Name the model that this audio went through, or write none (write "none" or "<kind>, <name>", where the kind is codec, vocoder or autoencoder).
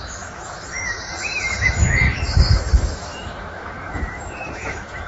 autoencoder, DAC-VAE